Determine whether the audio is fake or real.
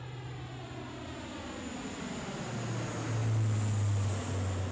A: real